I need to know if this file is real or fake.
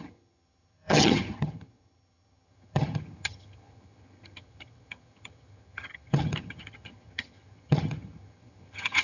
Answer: fake